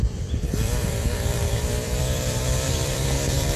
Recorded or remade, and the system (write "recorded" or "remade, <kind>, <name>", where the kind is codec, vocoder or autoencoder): remade, vocoder, BigVGAN v2